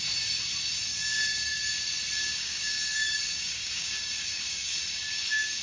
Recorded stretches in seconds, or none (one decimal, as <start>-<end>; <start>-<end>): 0.0-0.9; 1.6-2.2